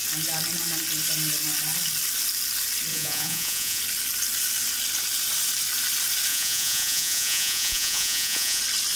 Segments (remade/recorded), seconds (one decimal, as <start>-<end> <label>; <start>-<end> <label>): 0.0-2.9 recorded; 2.9-3.8 remade; 3.8-6.3 recorded; 6.3-8.6 remade; 8.6-9.0 recorded